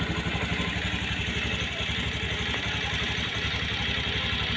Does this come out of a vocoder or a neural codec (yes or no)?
no